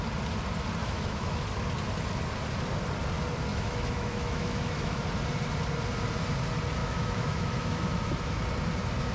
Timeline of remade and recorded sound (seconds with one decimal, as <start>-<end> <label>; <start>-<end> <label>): 0.0-0.8 recorded; 0.8-1.4 remade; 1.4-3.5 recorded; 3.5-5.0 remade; 5.0-6.8 recorded; 6.8-8.4 remade; 8.4-9.1 recorded